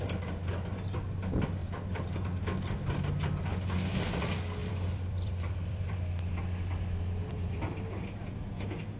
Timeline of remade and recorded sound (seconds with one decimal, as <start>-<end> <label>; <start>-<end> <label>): 0.0-4.6 recorded; 4.6-6.0 remade; 6.0-7.2 recorded; 7.2-7.8 remade; 7.8-9.0 recorded